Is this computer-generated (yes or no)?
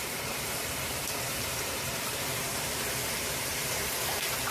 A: yes